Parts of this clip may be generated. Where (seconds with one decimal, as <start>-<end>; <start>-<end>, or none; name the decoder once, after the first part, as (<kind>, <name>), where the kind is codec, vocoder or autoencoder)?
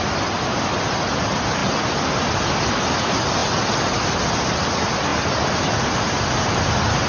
none